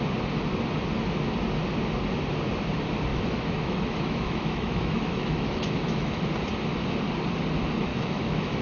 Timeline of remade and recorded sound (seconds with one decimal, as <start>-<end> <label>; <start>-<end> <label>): 0.0-3.1 recorded; 3.1-6.2 remade; 6.2-7.9 recorded; 7.9-8.6 remade